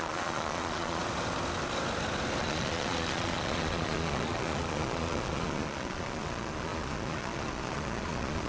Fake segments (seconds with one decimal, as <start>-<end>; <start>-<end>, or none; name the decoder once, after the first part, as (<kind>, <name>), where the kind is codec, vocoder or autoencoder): 0.0-1.0 (vocoder, Vocos); 2.4-8.5